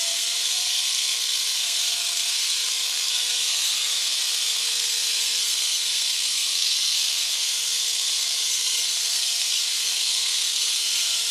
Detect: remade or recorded remade